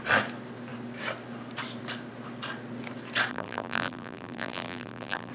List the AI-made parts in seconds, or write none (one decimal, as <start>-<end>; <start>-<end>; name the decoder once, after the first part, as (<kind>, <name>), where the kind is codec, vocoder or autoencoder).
3.3-5.3 (vocoder, BigVGAN v2)